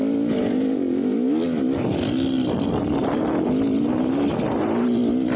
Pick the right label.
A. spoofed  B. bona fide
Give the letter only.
B